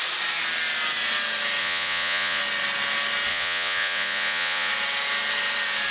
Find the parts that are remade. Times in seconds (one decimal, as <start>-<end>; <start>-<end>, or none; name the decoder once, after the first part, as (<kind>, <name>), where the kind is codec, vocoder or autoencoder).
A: 1.6-2.4 (vocoder, Vocos); 3.3-4.7